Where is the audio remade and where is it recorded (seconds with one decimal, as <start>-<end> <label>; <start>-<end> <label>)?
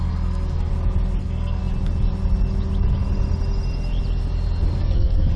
0.0-0.7 remade; 0.7-1.2 recorded; 1.2-1.6 remade; 1.6-4.8 recorded; 4.8-5.4 remade